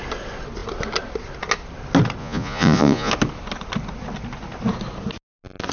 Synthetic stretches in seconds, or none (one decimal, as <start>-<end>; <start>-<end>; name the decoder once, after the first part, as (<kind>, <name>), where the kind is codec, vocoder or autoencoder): 2.2-3.1 (vocoder, Vocos)